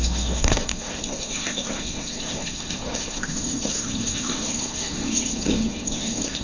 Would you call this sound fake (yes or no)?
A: yes